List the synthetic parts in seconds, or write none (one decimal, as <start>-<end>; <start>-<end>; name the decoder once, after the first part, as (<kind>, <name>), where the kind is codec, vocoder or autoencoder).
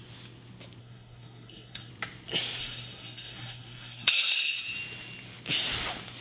0.8-1.9 (codec, SNAC); 2.6-4.6